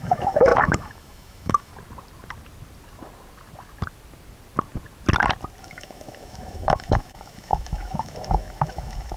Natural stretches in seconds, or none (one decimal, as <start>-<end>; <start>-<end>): 1.7-5.6